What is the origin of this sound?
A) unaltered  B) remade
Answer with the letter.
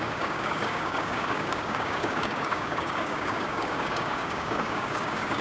B